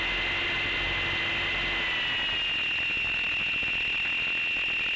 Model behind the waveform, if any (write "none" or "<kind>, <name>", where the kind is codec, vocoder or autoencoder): none